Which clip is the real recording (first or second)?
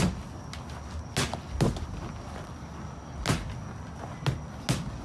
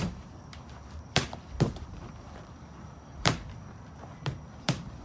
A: first